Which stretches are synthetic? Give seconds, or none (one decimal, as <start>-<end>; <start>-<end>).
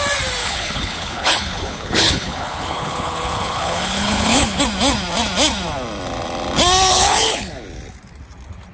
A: 0.4-4.6; 6.9-7.5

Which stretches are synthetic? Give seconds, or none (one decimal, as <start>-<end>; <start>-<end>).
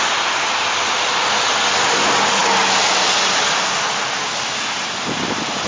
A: none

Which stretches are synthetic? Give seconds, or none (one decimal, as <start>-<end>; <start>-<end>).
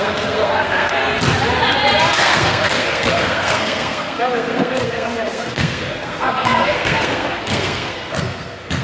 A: 0.0-1.0; 2.2-8.8